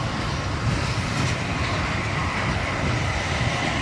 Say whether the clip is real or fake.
fake